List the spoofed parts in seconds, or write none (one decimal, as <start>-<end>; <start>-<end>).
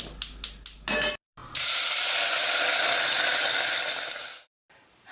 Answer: none